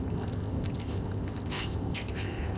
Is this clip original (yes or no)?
no